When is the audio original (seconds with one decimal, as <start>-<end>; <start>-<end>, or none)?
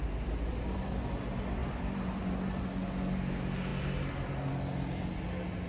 0.0-1.6; 2.3-5.7